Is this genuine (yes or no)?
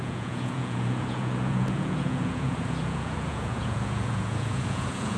no